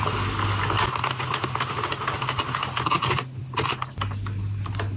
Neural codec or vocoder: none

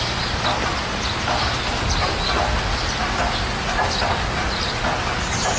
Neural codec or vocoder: none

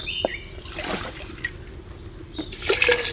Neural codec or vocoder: none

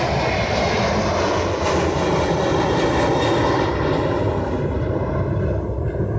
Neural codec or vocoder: none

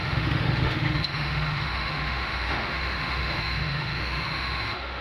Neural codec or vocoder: autoencoder, DAC-VAE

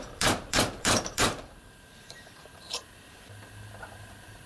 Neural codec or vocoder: vocoder, BigVGAN v2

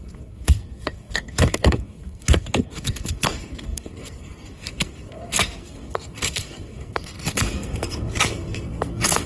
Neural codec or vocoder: codec, SNAC